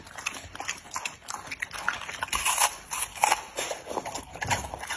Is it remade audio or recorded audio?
recorded